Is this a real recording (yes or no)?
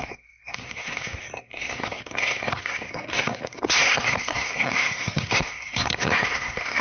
no